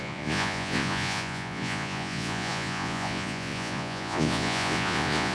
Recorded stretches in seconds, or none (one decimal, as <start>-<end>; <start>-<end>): none